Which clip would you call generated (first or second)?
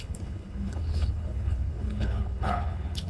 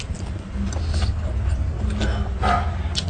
first